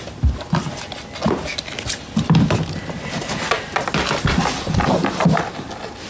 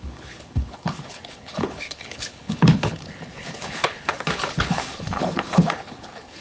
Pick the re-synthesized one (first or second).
second